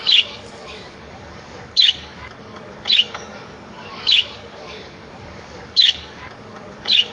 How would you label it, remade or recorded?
remade